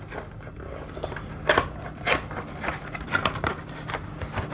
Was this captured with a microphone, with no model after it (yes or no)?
yes